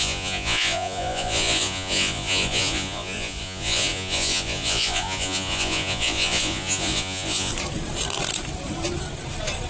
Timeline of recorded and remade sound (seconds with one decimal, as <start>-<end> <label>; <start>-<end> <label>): 0.0-7.5 remade; 7.5-9.7 recorded